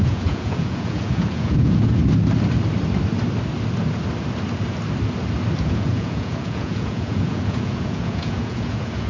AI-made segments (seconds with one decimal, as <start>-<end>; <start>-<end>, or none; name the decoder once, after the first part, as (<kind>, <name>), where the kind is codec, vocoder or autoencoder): 0.0-2.0 (vocoder, Vocos); 5.6-9.1